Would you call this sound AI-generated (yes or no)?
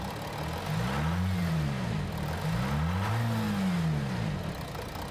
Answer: no